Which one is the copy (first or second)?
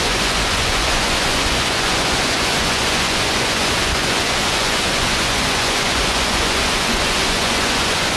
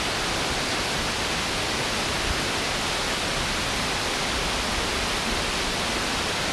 first